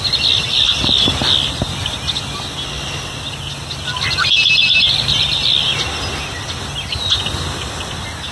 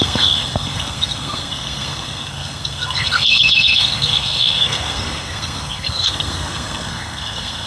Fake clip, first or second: second